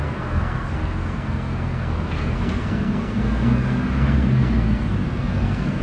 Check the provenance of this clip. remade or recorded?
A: remade